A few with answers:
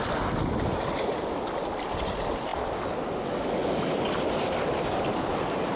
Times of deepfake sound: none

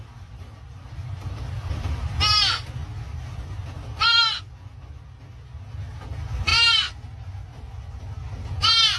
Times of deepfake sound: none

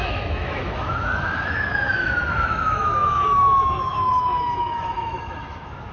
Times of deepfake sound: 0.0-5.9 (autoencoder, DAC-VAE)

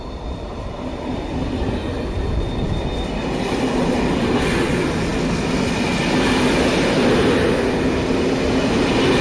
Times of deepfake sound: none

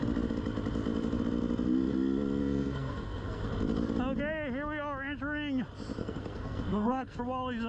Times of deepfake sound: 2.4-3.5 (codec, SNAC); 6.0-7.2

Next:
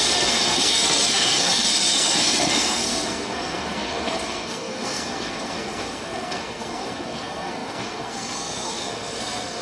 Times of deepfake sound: 0.0-9.6 (codec, SNAC)

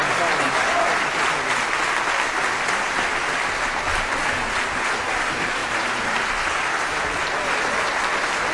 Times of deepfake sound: 5.6-6.3 (vocoder, BigVGAN v2)